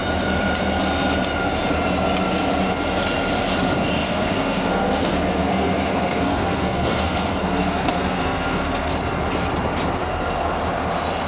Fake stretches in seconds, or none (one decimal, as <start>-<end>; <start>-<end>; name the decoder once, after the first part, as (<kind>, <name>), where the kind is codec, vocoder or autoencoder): 4.0-8.9 (codec, SNAC); 10.0-10.5